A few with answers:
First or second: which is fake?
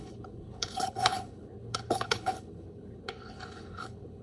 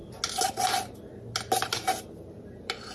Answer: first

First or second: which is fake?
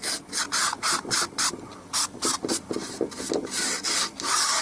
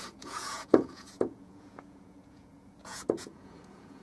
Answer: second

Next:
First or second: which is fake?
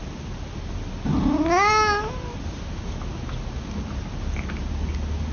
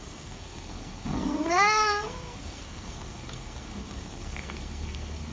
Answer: second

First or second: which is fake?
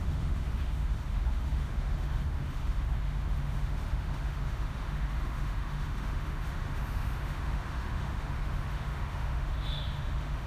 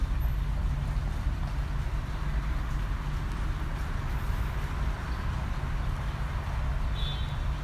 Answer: first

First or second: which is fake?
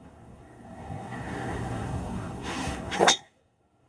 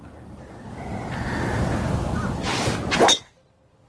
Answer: first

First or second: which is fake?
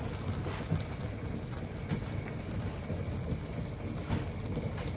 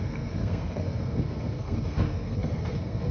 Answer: second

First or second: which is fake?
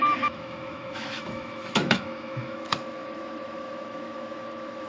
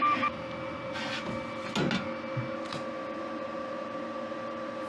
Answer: first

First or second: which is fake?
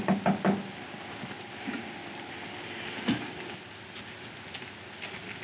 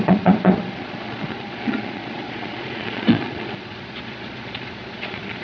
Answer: second